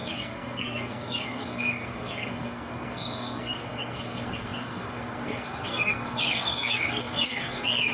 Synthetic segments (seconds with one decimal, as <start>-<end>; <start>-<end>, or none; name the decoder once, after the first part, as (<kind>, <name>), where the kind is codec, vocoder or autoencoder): 0.0-7.9 (codec, SNAC)